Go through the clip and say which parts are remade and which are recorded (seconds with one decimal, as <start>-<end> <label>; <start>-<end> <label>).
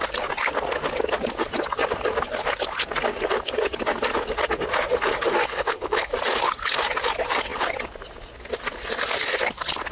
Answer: 0.0-5.4 recorded; 5.4-6.1 remade; 6.1-9.9 recorded